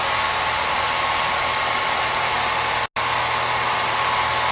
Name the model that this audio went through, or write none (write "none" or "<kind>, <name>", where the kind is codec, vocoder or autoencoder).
none